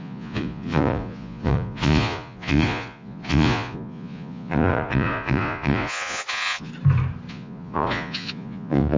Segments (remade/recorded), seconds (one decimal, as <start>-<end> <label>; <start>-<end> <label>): 0.0-6.7 remade; 6.7-7.3 recorded; 7.3-9.0 remade